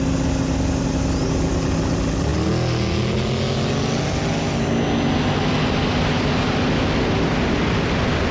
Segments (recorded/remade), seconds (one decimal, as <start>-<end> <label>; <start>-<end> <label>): 0.0-8.3 recorded